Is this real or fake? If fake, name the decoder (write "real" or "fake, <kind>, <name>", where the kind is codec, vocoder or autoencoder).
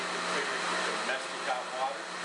real